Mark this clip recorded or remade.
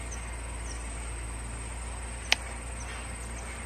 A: recorded